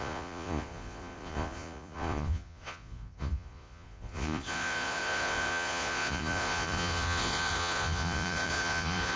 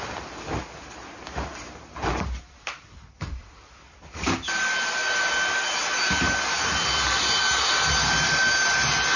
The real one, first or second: second